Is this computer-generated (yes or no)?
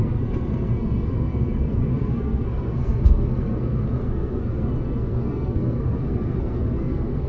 yes